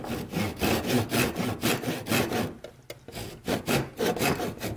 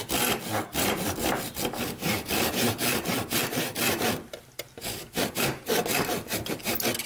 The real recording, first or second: first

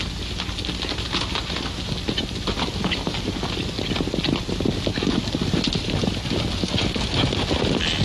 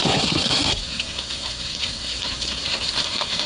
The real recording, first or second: first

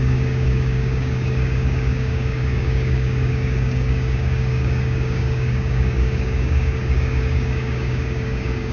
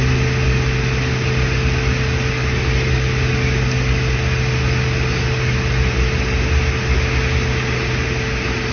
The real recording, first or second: second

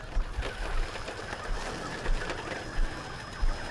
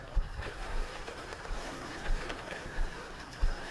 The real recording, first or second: first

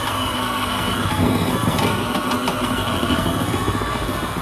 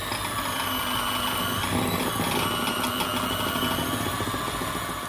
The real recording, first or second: second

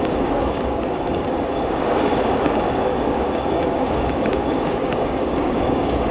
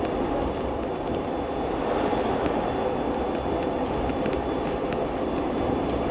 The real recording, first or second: second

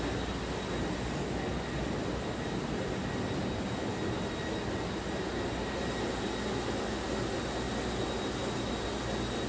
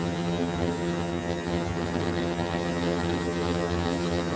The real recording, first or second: first